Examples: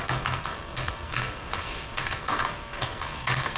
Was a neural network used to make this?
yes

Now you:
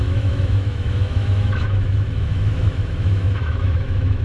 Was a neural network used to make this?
yes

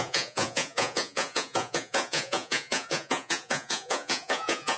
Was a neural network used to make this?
yes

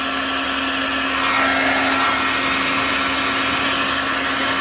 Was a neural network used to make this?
no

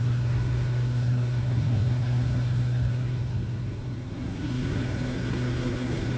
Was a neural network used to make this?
yes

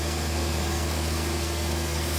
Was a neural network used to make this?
yes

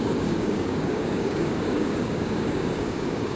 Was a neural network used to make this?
yes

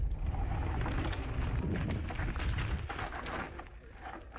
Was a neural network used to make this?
no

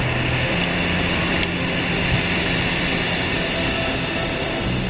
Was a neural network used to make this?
no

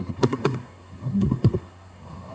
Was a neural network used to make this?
yes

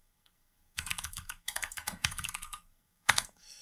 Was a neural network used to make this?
yes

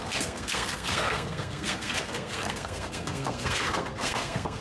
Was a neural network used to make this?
yes